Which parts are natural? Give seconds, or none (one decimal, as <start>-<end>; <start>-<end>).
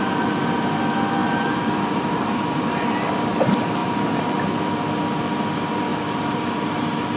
0.0-1.2; 2.6-3.8; 4.3-5.9